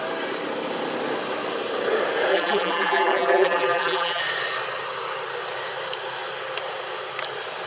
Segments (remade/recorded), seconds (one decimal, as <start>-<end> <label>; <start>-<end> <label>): 0.0-2.3 recorded; 2.3-4.2 remade; 4.2-7.7 recorded